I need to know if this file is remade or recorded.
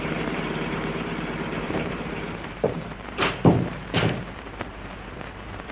remade